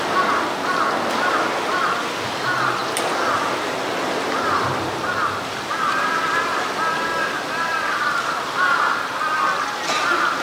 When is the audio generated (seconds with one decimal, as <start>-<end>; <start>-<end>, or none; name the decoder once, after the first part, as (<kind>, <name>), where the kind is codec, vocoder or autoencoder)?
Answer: none

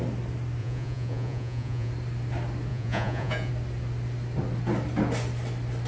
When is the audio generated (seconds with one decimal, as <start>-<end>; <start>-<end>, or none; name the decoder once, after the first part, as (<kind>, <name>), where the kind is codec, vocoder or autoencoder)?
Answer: 0.6-1.9 (vocoder, Vocos); 2.7-3.5